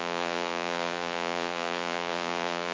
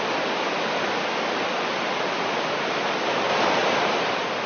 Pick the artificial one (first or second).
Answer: first